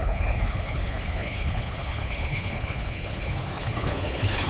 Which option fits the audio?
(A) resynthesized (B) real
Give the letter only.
A